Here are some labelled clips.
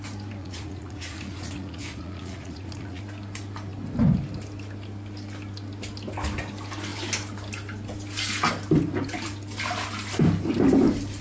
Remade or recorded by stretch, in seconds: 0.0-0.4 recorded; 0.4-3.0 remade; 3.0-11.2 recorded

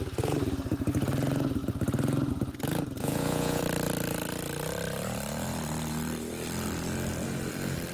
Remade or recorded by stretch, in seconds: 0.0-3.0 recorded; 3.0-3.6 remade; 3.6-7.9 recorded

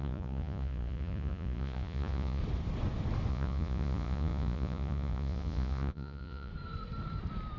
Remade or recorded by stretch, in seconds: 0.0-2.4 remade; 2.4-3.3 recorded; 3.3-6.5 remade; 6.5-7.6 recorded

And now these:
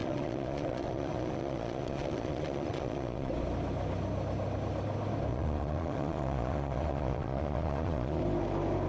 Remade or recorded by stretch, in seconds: 0.0-3.3 remade; 3.3-5.3 recorded; 5.3-8.2 remade; 8.2-8.9 recorded

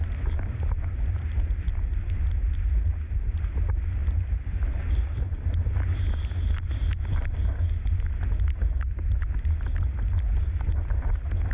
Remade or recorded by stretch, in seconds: 0.0-11.5 recorded

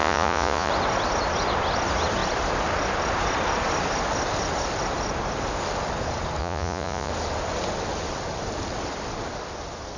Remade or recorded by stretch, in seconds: 0.0-0.7 remade; 0.7-6.4 recorded; 6.4-7.1 remade; 7.1-10.0 recorded